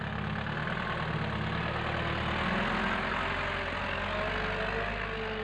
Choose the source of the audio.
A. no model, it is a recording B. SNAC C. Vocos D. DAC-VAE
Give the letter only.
A